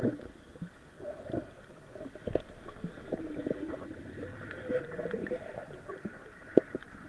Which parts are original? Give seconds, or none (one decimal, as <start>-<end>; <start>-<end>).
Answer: 0.5-3.6; 4.3-4.8; 5.2-5.9